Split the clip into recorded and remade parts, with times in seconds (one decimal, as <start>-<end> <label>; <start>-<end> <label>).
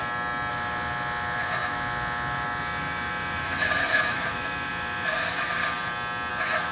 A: 0.0-0.5 recorded; 0.5-5.6 remade; 5.6-6.3 recorded; 6.3-6.7 remade